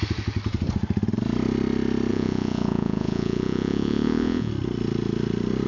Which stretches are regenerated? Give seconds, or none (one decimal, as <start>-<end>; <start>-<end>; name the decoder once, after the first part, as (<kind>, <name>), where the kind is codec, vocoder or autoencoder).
2.1-4.5 (vocoder, Vocos)